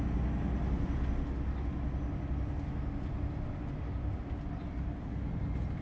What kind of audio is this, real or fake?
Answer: real